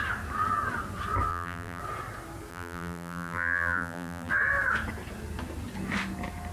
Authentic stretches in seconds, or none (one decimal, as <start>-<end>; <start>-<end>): 0.0-1.3; 1.8-2.5; 4.3-6.5